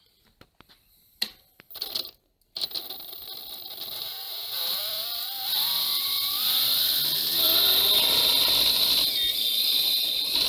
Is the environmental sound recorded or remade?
recorded